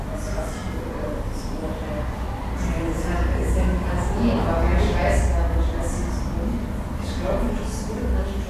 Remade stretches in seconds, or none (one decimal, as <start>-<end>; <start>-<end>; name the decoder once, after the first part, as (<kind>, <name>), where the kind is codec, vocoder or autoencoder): none